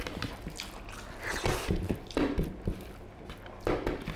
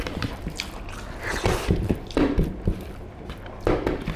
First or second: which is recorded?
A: first